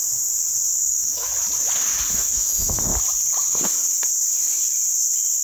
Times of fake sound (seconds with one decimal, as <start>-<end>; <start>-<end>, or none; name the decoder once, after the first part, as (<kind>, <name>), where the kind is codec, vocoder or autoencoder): 0.8-1.3 (autoencoder, DAC-VAE); 2.1-2.9